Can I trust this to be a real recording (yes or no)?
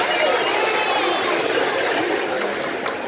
yes